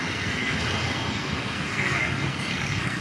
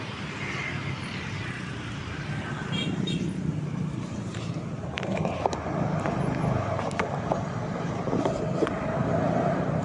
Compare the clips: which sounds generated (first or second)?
first